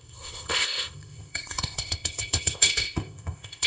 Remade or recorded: remade